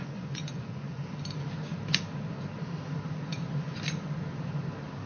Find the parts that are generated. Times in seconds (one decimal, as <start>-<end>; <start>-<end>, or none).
0.0-1.0